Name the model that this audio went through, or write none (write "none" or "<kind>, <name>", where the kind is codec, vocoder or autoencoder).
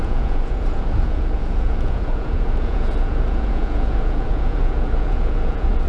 vocoder, Vocos